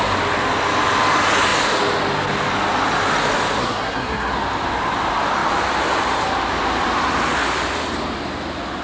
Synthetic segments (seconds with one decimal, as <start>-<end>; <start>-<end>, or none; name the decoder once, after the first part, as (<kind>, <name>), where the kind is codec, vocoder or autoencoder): 3.6-4.3 (codec, SNAC)